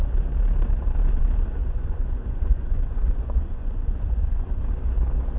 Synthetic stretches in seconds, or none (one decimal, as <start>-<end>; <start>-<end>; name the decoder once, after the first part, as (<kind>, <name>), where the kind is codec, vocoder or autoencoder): 1.6-4.6 (vocoder, Vocos)